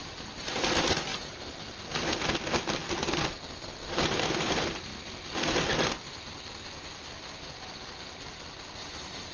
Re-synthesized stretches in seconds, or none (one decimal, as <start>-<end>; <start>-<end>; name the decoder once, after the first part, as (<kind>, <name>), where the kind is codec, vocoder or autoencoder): 0.0-1.1 (vocoder, BigVGAN v2); 4.3-4.9; 8.8-9.3